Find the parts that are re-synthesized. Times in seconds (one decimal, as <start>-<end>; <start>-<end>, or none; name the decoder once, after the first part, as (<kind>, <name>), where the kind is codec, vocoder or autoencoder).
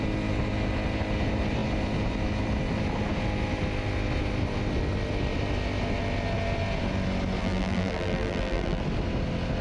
7.4-8.8 (vocoder, BigVGAN v2)